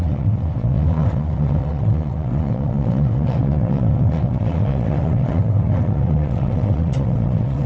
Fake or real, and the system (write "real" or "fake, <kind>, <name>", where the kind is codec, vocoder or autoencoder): fake, vocoder, WaveNeXt